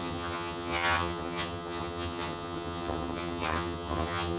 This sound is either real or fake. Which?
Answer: fake